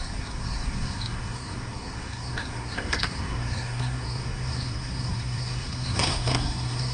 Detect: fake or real fake